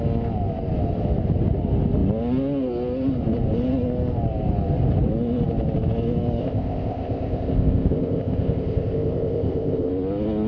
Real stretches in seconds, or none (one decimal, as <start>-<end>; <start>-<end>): 0.0-6.4; 9.9-10.5